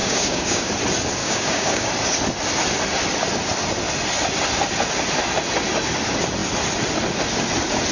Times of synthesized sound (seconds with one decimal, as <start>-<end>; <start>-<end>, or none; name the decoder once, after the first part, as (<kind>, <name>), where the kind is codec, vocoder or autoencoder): 0.0-0.7 (codec, DAC); 1.2-1.9